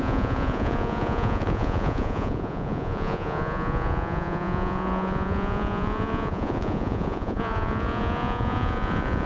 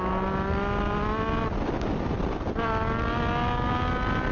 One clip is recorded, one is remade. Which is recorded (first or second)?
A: second